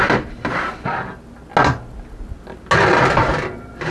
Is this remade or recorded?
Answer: recorded